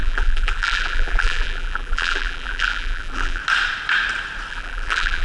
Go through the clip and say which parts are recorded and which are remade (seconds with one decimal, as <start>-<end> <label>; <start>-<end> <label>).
0.0-3.4 remade; 3.4-4.5 recorded; 4.5-5.2 remade